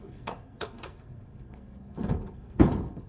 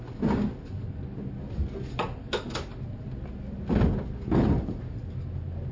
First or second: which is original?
second